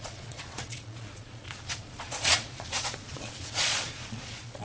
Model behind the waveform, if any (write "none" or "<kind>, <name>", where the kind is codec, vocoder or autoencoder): vocoder, Vocos